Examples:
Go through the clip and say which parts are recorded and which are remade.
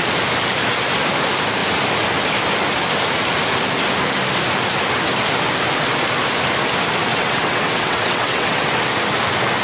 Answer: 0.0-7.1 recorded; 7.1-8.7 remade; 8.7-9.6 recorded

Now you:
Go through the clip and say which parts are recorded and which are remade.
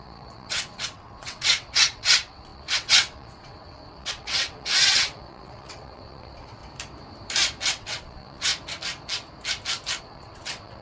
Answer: 0.0-6.6 remade; 6.6-7.7 recorded; 7.7-8.5 remade; 8.5-10.0 recorded; 10.0-10.8 remade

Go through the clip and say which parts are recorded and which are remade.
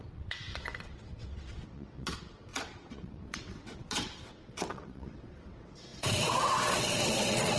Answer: 0.0-7.6 remade